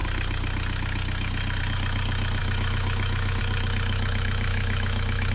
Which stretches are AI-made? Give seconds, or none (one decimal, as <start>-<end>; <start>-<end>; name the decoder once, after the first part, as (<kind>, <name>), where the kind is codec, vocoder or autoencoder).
2.4-3.4 (autoencoder, DAC-VAE); 4.5-5.3